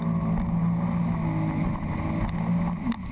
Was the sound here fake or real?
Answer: real